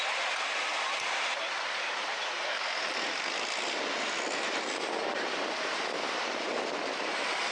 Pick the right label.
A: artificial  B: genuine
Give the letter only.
B